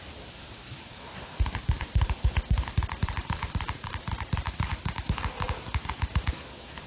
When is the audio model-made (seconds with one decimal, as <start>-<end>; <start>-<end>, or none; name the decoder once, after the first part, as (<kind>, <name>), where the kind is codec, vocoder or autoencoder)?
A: 0.0-6.9 (vocoder, BigVGAN v2)